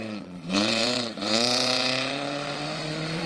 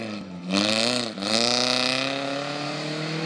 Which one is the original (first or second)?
second